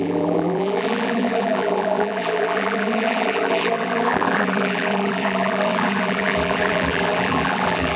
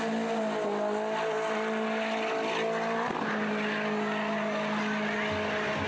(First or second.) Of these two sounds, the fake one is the first